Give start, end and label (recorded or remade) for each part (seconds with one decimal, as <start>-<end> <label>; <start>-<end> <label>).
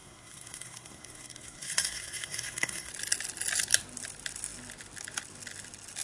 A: 0.0-2.9 remade; 2.9-6.0 recorded